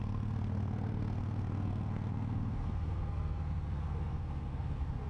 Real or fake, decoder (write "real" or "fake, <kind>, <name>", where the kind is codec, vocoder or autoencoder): fake, codec, SNAC